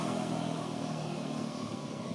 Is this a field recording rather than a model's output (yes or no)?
no